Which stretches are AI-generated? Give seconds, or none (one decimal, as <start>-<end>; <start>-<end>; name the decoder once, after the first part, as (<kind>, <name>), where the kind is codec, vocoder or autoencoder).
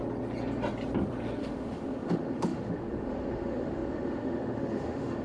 1.4-5.2 (autoencoder, DAC-VAE)